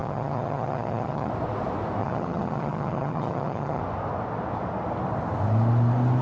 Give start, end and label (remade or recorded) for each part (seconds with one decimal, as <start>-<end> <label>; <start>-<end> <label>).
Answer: 0.0-1.3 remade; 1.3-2.0 recorded; 2.0-3.8 remade; 3.8-6.2 recorded